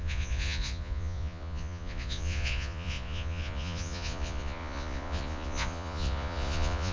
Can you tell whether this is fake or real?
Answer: fake